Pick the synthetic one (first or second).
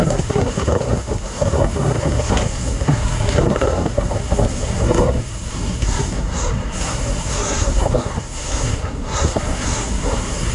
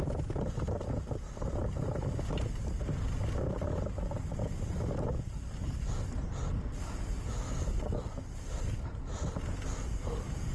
first